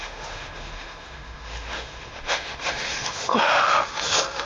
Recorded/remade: remade